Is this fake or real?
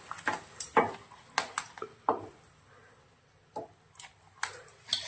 real